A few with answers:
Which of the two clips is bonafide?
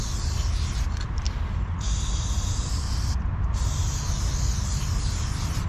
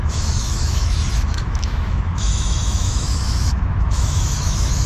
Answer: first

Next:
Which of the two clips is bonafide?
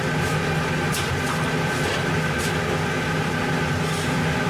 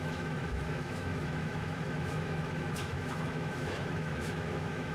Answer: first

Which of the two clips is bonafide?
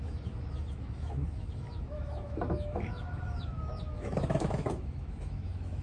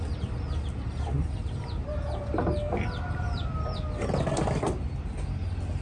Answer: second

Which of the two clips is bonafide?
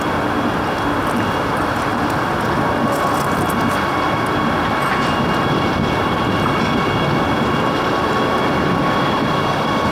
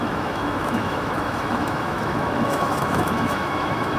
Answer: first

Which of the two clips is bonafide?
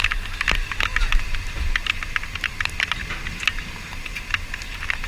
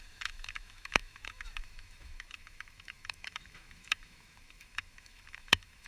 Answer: first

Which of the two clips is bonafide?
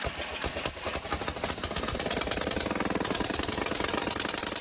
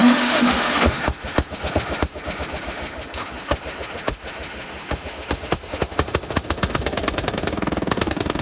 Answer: first